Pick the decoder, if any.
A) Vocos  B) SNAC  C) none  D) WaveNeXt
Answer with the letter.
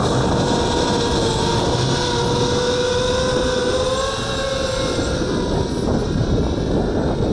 C